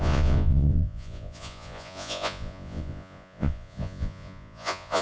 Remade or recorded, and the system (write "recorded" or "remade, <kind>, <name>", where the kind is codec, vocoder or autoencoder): remade, vocoder, Vocos